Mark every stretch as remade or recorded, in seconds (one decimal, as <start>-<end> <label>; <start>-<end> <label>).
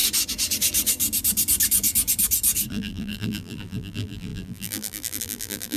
0.0-2.7 recorded; 2.7-5.8 remade